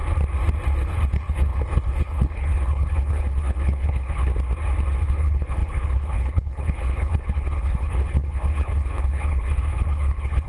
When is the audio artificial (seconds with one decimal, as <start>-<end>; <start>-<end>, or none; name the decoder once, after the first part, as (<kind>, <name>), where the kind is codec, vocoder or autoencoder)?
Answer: 0.8-4.3 (codec, HILCodec); 5.1-10.5

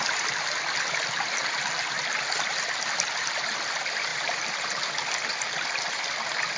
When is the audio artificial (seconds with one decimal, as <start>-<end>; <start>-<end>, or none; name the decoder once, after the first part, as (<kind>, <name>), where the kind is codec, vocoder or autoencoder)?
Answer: 4.1-4.8 (vocoder, BigVGAN v2)

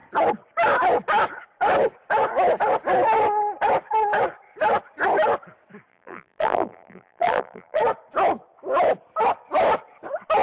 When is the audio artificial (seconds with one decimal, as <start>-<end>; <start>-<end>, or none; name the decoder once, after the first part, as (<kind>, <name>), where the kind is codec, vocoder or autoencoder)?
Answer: 5.9-7.8 (vocoder, BigVGAN v2)

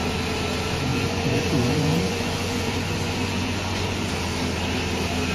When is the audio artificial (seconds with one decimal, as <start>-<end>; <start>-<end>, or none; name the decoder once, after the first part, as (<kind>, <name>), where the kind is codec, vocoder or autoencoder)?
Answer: 0.9-4.1 (vocoder, Vocos)

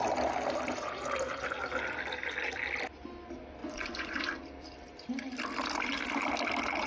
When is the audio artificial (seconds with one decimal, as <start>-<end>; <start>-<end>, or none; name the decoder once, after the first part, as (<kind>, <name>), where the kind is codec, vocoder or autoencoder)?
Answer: 3.6-4.2 (vocoder, Vocos)